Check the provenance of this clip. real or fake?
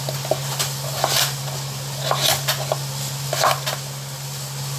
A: real